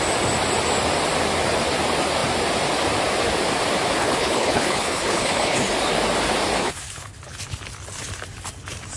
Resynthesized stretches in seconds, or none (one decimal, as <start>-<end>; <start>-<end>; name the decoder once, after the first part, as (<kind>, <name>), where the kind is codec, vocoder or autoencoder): 4.0-5.7 (codec, HILCodec); 6.6-7.2